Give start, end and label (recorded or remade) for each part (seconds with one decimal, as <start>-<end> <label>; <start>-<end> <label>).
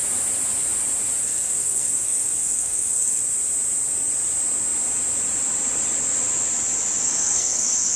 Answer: 0.0-1.2 recorded; 1.2-3.2 remade; 3.2-7.0 recorded; 7.0-8.0 remade